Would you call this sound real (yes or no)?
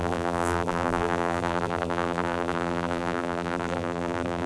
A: no